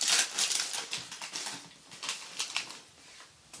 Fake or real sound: real